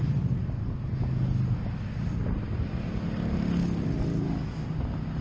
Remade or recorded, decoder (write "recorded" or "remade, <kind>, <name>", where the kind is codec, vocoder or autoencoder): recorded